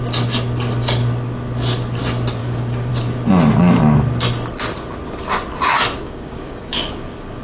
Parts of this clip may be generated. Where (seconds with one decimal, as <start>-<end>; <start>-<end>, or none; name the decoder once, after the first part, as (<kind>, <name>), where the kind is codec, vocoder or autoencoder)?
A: 2.4-2.9 (codec, DAC); 6.0-7.4